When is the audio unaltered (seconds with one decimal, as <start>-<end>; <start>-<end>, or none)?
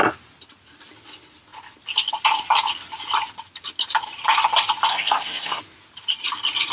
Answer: 0.0-4.9; 5.6-6.7